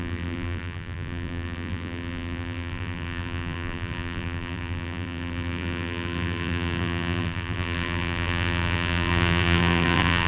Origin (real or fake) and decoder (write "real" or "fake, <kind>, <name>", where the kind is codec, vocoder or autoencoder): fake, vocoder, BigVGAN v2